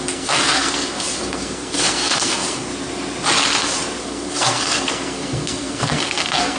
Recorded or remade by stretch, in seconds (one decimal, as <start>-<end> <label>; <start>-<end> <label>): 0.0-2.7 remade; 2.7-4.0 recorded; 4.0-6.6 remade